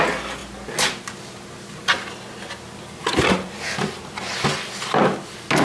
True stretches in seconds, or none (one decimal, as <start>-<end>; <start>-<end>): 0.0-5.6